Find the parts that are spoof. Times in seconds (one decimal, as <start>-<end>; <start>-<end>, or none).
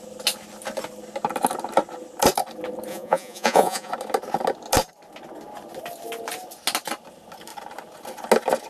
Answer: 2.9-3.9